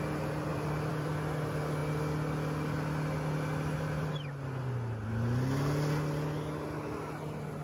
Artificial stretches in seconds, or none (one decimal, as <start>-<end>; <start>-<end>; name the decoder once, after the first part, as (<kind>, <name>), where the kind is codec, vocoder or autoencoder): 0.5-1.1 (vocoder, BigVGAN v2)